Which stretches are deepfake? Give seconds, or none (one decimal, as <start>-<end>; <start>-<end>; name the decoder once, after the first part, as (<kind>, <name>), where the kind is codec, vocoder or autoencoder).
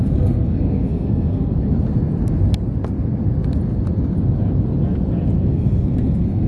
0.0-1.5 (codec, SNAC); 5.4-6.5